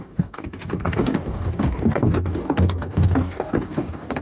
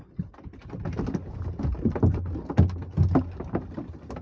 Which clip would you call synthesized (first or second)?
first